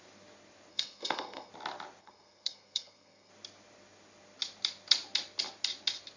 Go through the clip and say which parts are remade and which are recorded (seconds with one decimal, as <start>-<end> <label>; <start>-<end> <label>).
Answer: 0.0-0.7 recorded; 0.7-1.5 remade; 1.5-2.0 recorded; 2.0-3.3 remade; 3.3-6.2 recorded